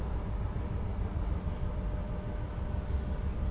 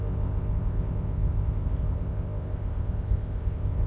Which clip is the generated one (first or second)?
second